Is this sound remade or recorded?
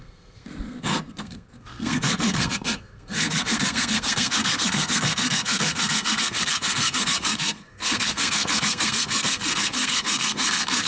remade